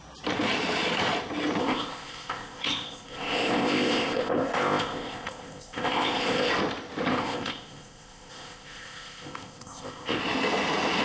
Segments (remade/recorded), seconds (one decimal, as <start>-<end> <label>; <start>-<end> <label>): 0.0-1.6 recorded; 1.6-6.5 remade; 6.5-7.1 recorded; 7.1-10.2 remade; 10.2-11.0 recorded